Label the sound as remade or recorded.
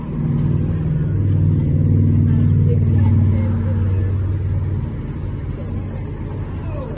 recorded